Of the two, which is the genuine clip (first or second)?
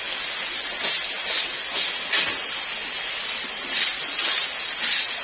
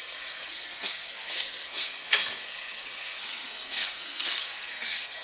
first